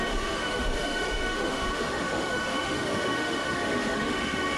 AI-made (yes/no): yes